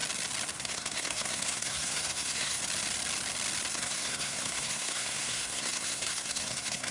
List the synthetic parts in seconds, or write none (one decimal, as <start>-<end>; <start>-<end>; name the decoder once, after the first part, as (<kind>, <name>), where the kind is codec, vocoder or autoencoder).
0.6-2.6 (codec, SNAC); 3.7-6.9